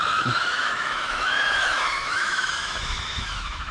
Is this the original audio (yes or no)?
no